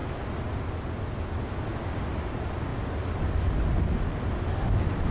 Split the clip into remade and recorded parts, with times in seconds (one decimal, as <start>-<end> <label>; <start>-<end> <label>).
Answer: 0.0-2.7 recorded; 2.7-3.4 remade; 3.4-5.1 recorded